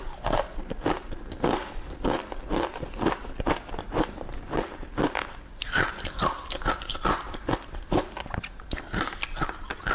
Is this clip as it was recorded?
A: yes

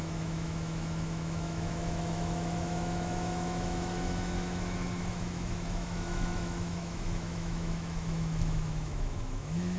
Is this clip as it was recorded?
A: no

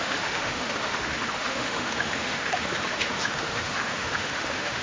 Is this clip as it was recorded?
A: no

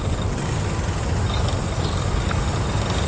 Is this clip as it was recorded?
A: yes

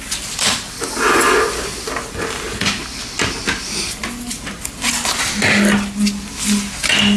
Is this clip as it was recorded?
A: yes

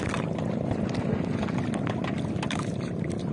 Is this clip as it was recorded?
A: yes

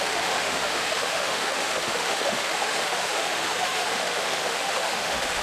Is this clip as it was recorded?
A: no